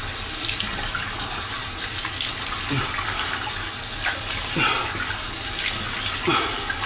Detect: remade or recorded recorded